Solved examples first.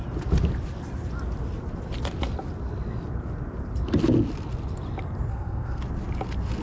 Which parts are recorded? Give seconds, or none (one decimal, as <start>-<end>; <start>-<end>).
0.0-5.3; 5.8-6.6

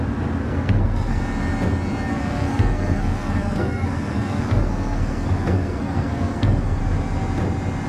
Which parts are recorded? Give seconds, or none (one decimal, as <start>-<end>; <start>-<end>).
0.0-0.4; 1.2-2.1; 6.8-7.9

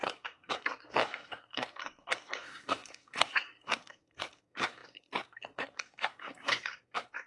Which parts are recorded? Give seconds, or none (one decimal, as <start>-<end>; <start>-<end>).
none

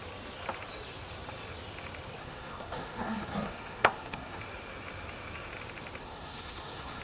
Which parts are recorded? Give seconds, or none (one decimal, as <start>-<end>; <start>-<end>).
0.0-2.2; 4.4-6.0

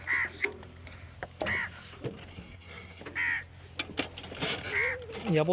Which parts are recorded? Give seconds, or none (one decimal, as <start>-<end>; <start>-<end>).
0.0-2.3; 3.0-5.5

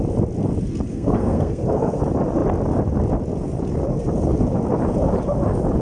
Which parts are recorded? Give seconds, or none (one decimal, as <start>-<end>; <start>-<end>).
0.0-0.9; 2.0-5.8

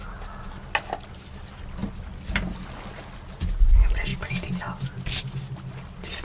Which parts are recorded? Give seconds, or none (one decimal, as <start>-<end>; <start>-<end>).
0.0-6.2